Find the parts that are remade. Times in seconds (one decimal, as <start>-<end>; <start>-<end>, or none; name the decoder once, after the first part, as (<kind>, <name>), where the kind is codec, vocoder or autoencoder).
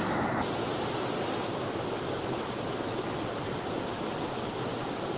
none